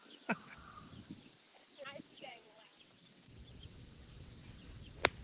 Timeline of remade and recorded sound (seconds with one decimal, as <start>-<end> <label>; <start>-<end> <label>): 0.0-0.8 remade; 0.8-2.1 recorded; 2.1-5.2 remade